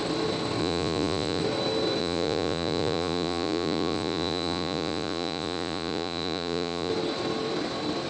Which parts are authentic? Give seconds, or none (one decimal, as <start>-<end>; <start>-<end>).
0.0-0.6; 1.4-2.0; 6.9-8.1